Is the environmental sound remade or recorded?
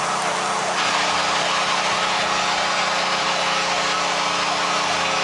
recorded